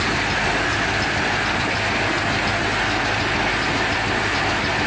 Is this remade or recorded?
recorded